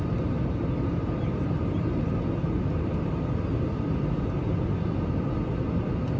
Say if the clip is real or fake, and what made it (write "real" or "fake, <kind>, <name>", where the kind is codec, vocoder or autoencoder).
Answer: real